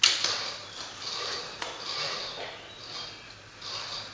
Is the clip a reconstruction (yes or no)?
no